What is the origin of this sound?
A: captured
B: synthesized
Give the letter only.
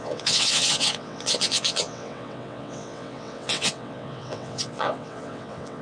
B